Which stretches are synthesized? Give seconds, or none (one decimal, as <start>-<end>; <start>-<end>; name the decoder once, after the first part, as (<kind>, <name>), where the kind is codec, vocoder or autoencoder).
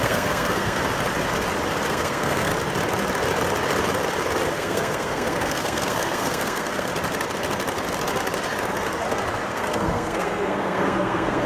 0.0-0.8 (codec, SNAC); 1.9-2.5; 4.5-6.9; 9.5-11.5